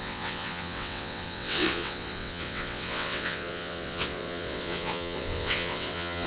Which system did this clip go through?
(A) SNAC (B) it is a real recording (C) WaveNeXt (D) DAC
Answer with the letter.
C